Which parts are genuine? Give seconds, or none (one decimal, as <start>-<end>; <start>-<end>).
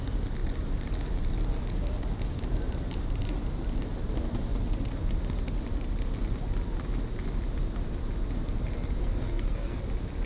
0.0-9.0; 9.8-10.3